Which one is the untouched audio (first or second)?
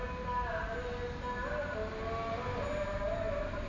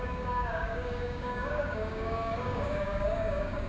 first